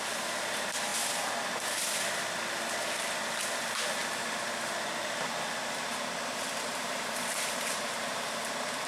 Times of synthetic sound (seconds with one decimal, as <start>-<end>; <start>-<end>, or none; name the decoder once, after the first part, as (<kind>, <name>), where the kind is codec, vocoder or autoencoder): 4.0-8.9 (vocoder, BigVGAN v2)